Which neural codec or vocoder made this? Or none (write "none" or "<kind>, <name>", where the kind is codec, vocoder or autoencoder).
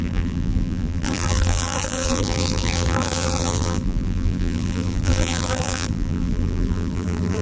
vocoder, BigVGAN v2